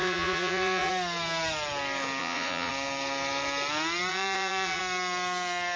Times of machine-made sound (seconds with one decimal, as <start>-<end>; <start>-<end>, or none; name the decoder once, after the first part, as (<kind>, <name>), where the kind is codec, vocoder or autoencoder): 0.0-0.9 (vocoder, Vocos); 2.2-2.7; 4.1-4.8

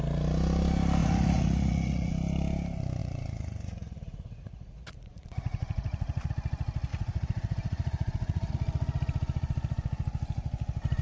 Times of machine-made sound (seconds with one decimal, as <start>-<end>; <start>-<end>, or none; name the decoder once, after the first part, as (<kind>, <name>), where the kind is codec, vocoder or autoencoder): 1.0-2.1 (vocoder, Vocos); 3.0-6.3; 6.9-8.5

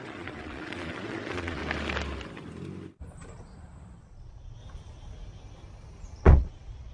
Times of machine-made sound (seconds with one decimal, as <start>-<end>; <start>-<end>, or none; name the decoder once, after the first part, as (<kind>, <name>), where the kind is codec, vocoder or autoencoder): 0.0-1.6 (vocoder, Vocos); 4.0-4.6; 6.2-6.9

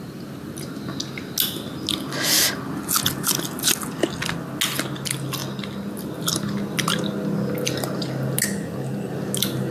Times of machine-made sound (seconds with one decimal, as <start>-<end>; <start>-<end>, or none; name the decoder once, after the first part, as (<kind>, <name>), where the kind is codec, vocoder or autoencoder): none

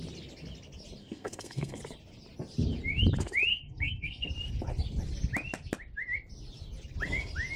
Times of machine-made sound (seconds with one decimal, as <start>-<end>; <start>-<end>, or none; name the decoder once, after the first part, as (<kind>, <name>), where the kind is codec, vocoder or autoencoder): 1.0-1.8 (codec, SNAC); 3.5-4.3

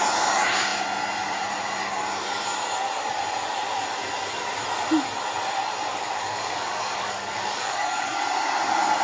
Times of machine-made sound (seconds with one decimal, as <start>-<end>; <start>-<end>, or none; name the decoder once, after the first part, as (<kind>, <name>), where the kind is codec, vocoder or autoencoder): 5.9-8.2 (codec, DAC)

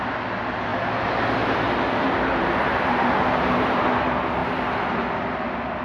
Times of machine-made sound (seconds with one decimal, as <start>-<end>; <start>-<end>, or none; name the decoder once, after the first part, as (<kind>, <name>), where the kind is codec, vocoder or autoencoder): 0.7-3.8 (vocoder, BigVGAN v2)